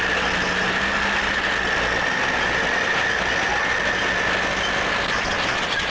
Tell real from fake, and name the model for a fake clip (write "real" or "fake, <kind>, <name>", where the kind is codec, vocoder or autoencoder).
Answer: real